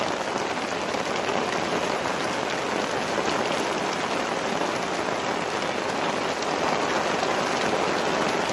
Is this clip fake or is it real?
real